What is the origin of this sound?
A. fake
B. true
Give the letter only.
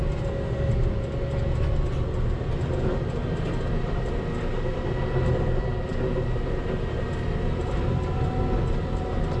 B